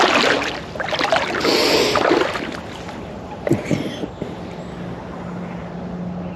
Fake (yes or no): no